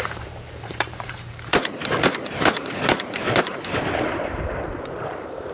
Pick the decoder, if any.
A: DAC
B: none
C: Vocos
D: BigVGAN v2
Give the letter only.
D